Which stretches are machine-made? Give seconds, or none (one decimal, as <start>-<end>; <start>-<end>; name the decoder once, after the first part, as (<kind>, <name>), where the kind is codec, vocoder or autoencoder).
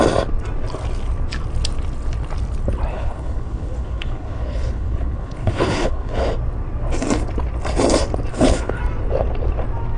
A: 2.9-6.2 (codec, HILCodec); 8.3-8.8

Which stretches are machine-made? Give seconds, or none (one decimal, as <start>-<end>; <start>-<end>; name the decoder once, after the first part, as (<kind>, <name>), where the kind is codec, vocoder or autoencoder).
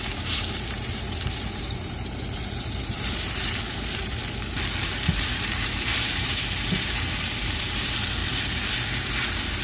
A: 0.0-4.2 (vocoder, BigVGAN v2); 4.9-9.6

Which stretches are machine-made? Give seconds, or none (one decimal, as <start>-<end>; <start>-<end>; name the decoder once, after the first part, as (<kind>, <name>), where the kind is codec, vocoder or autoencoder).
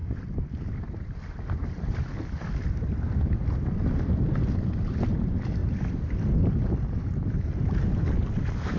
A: 0.0-8.8 (vocoder, BigVGAN v2)